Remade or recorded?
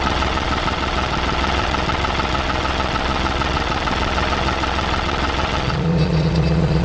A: remade